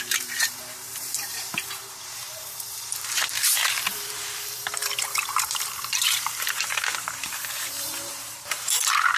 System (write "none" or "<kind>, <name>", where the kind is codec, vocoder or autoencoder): vocoder, BigVGAN v2